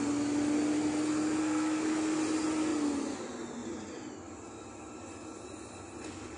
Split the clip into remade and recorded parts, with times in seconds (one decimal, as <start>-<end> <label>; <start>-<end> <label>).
0.0-1.4 recorded; 1.4-2.2 remade; 2.2-6.4 recorded